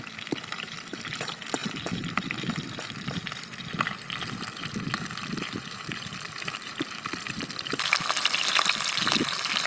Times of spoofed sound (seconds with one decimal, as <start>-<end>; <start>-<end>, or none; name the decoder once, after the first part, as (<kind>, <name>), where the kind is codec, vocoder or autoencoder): none